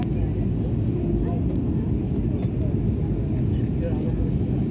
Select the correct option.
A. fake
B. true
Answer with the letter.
B